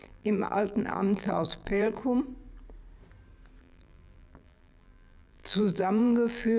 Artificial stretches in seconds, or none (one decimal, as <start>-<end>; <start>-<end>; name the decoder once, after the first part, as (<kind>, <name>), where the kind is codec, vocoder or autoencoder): 0.0-2.0 (vocoder, BigVGAN v2); 3.6-6.6